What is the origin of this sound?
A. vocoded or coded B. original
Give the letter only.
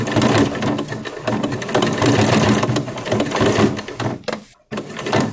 B